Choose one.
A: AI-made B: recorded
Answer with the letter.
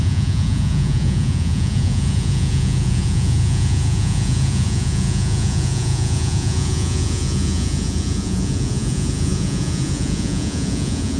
A